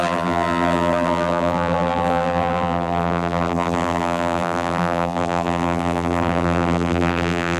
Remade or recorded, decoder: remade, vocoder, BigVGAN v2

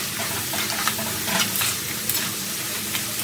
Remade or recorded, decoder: recorded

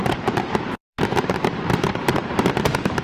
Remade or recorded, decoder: remade, vocoder, BigVGAN v2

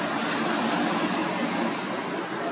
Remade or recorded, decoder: recorded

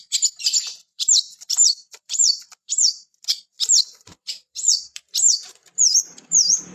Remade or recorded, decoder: remade, vocoder, BigVGAN v2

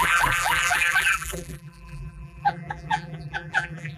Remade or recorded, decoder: remade, vocoder, BigVGAN v2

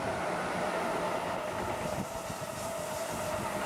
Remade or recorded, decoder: recorded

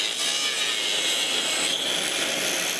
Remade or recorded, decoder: recorded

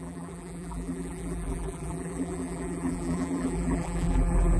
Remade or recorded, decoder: remade, vocoder, BigVGAN v2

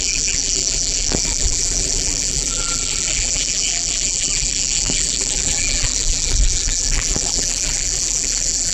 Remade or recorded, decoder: remade, vocoder, BigVGAN v2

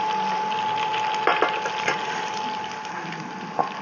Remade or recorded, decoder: recorded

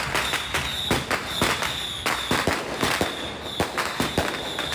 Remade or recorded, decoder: recorded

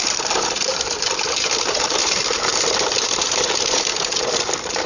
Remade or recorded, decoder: remade, vocoder, BigVGAN v2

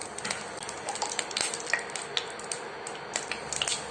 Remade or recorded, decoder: recorded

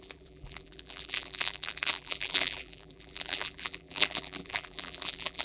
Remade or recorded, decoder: remade, vocoder, BigVGAN v2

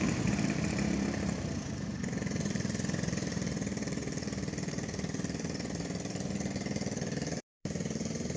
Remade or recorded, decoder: remade, vocoder, BigVGAN v2